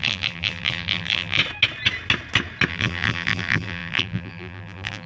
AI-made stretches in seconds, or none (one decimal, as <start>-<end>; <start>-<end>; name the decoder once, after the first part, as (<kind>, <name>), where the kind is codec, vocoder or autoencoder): 0.0-1.4 (vocoder, BigVGAN v2); 2.7-5.1